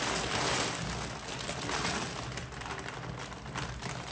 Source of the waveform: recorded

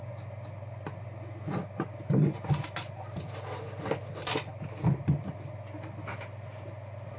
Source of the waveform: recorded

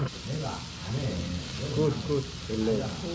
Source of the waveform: recorded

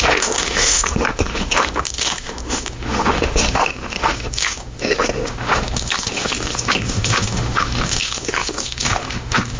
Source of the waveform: remade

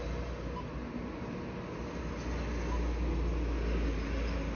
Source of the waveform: recorded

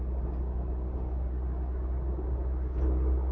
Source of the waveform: recorded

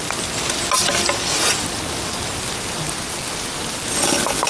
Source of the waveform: recorded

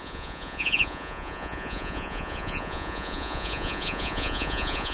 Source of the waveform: remade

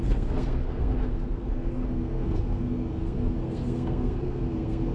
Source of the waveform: remade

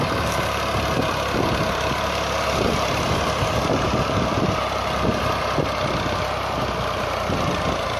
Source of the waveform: recorded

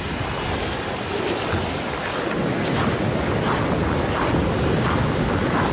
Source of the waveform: recorded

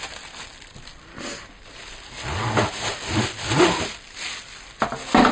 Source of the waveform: recorded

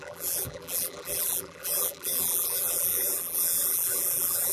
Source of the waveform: remade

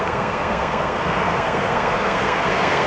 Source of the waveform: remade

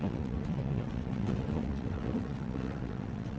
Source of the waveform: remade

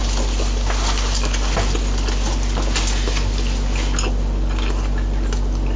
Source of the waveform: recorded